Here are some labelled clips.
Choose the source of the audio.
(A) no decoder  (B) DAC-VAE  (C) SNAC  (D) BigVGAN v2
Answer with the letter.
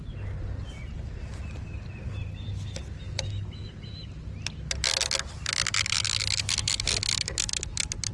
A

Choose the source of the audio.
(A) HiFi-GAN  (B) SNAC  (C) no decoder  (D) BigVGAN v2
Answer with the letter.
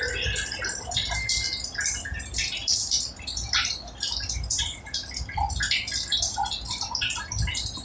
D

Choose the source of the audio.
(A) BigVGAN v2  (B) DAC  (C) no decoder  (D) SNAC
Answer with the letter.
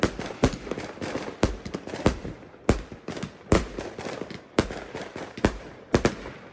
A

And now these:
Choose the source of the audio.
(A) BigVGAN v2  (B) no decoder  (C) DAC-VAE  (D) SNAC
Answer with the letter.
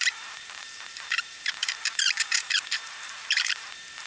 A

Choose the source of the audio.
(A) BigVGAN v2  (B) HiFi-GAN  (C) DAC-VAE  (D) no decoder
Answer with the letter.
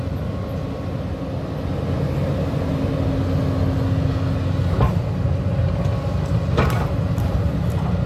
D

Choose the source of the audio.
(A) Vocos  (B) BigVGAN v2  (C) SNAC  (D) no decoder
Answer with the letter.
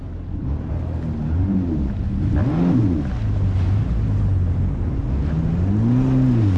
D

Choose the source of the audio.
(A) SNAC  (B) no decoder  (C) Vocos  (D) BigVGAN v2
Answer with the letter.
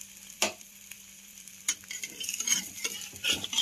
D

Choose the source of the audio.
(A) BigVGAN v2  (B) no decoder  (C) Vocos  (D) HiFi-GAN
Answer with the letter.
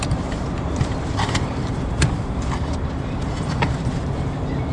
A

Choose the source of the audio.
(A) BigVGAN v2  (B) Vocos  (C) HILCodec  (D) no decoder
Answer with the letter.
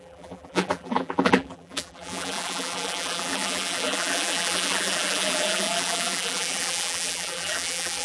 A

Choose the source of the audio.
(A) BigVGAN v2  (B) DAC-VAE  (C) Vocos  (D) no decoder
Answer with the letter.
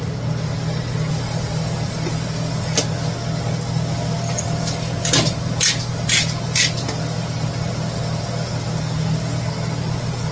D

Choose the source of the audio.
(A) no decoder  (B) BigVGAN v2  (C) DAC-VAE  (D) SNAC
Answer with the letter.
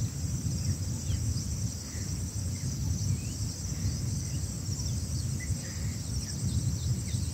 A